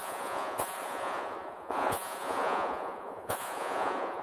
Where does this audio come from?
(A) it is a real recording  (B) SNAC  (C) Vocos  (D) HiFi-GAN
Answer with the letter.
C